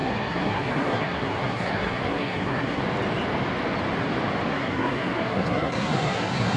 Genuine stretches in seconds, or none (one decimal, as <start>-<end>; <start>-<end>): 2.8-4.5